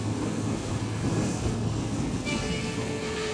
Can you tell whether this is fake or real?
fake